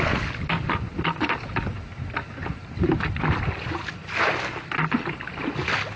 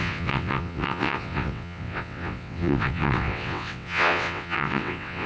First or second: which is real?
first